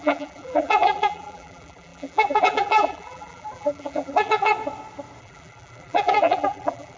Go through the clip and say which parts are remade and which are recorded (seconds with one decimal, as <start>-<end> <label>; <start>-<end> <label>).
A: 0.0-4.5 remade; 4.5-5.2 recorded; 5.2-7.0 remade